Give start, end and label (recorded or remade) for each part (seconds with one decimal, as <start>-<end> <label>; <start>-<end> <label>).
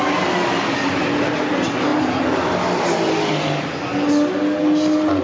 0.0-5.2 recorded